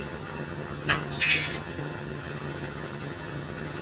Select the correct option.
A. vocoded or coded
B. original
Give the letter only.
A